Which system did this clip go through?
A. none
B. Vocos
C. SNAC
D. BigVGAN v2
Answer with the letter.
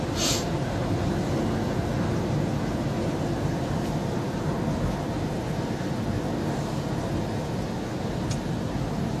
A